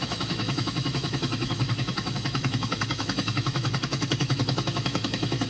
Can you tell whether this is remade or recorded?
remade